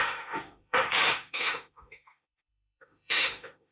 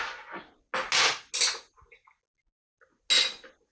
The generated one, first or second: first